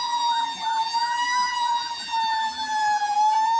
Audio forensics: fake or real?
fake